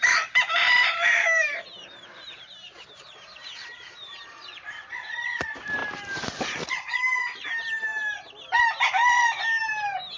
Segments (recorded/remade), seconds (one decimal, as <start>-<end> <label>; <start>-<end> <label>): 0.0-5.8 remade; 5.8-6.4 recorded; 6.4-7.9 remade; 7.9-9.6 recorded; 9.6-10.2 remade